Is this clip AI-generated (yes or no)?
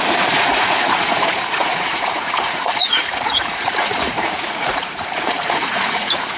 yes